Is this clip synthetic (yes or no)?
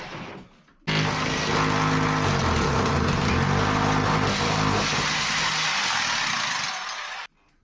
no